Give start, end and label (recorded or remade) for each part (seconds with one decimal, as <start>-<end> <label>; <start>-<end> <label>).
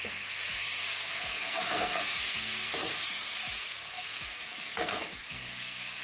0.0-6.0 remade